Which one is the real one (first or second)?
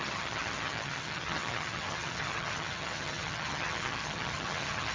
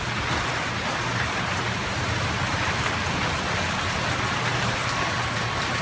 second